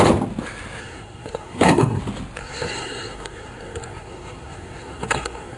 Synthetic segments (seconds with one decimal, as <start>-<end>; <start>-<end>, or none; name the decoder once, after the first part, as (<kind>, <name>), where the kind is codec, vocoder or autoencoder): 0.8-2.0 (codec, SNAC); 2.4-5.6